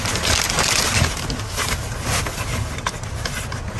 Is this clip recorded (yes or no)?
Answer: yes